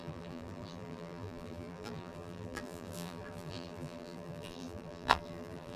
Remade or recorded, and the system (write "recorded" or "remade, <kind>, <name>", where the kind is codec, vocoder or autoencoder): remade, vocoder, BigVGAN v2